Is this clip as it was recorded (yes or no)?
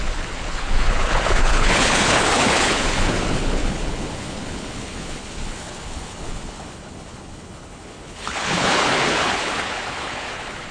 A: no